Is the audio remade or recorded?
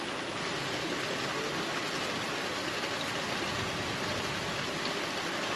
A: recorded